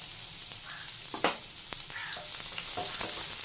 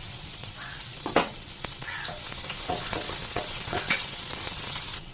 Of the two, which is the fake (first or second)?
second